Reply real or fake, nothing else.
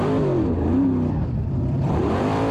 fake